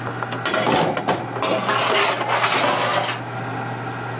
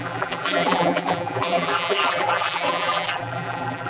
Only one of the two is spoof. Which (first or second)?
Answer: second